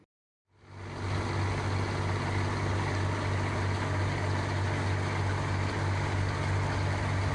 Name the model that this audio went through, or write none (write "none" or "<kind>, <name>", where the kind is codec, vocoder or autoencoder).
none